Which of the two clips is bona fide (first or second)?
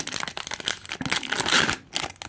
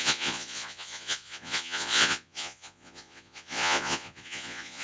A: first